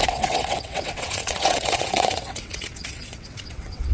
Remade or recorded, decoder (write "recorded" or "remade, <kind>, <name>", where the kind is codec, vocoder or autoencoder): remade, vocoder, WaveNeXt